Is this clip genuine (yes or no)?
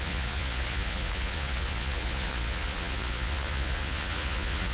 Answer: no